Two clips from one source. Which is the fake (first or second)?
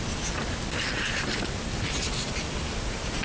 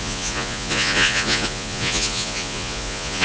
second